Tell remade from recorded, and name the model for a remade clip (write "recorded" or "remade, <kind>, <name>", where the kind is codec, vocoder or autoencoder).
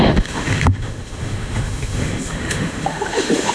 remade, autoencoder, DAC-VAE